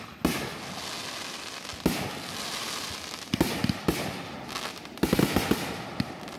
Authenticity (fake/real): real